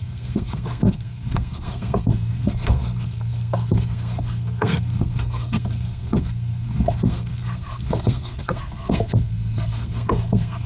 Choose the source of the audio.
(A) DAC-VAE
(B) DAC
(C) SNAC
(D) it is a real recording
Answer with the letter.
C